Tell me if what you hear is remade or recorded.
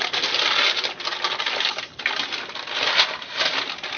recorded